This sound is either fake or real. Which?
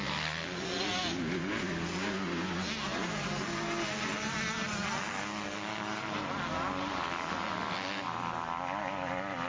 real